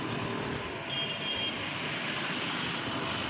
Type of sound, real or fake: real